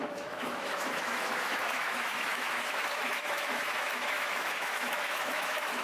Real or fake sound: fake